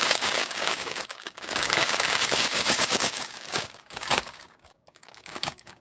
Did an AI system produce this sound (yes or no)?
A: yes